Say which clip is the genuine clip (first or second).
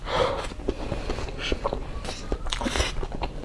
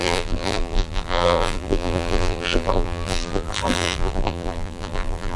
first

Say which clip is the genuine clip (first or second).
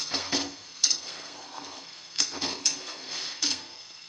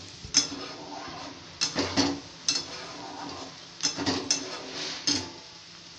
second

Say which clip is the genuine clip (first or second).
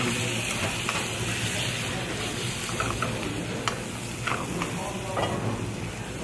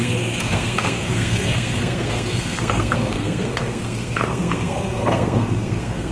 first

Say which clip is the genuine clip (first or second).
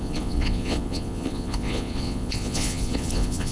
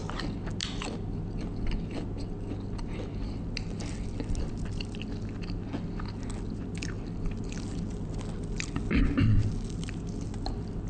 second